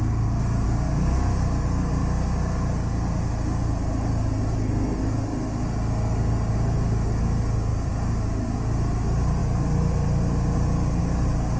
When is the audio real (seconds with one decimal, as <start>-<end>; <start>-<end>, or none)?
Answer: 0.0-7.7; 8.6-11.6